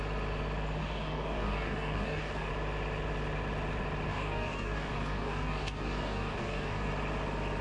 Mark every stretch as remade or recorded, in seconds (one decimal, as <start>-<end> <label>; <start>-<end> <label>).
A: 0.0-0.8 recorded; 0.8-2.5 remade; 2.5-4.1 recorded; 4.1-6.9 remade; 6.9-7.6 recorded